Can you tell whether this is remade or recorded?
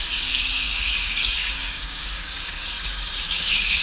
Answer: remade